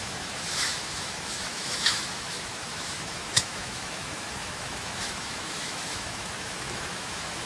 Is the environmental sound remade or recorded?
remade